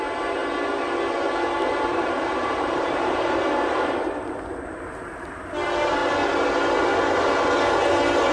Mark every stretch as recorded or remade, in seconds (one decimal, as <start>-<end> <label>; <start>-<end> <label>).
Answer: 0.0-0.4 remade; 0.4-1.9 recorded; 1.9-6.0 remade; 6.0-8.3 recorded